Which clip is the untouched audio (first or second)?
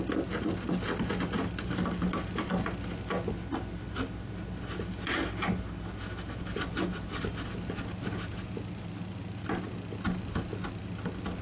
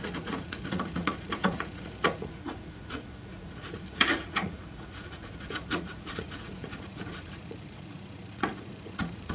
first